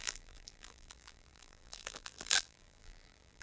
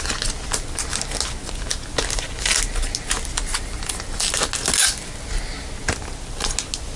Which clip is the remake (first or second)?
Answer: first